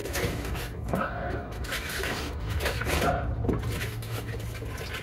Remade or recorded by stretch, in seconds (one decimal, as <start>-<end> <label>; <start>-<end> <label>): 0.0-3.0 remade; 3.0-3.8 recorded; 3.8-4.3 remade; 4.3-5.0 recorded